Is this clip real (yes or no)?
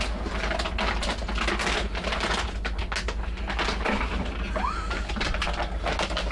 yes